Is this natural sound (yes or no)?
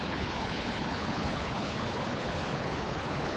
no